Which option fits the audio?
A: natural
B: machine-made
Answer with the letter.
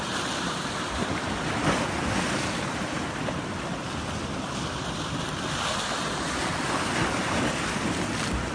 A